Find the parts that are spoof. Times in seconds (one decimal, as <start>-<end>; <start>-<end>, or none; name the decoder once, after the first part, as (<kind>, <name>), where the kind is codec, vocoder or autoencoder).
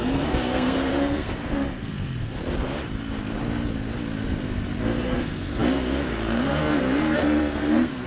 0.0-2.4 (codec, SNAC); 4.8-8.1